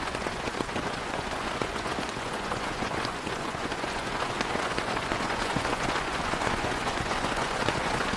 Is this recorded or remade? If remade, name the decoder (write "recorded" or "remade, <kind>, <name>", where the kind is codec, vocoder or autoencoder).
remade, vocoder, Vocos